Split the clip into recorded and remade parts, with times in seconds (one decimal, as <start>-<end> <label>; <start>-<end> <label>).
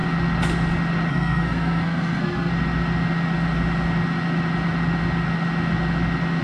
0.0-1.1 recorded; 1.1-2.5 remade; 2.5-6.4 recorded